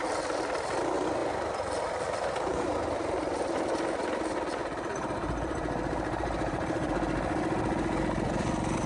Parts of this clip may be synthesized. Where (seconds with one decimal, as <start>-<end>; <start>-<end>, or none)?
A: 2.5-4.0; 4.6-6.9